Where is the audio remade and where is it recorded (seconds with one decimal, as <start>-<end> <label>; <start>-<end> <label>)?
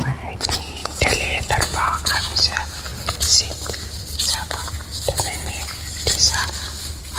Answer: 0.0-0.8 recorded; 0.8-1.8 remade; 1.8-7.2 recorded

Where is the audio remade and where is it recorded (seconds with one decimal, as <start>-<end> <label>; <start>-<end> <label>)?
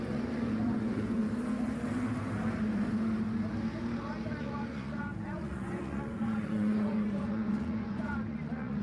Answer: 0.0-1.2 remade; 1.2-4.4 recorded; 4.4-8.8 remade